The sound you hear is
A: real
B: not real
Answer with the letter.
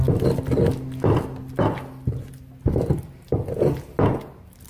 A